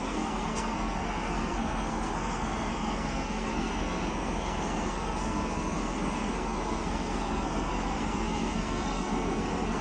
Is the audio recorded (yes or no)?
no